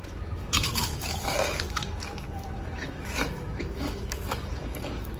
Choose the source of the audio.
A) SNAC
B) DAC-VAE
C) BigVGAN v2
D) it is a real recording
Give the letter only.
B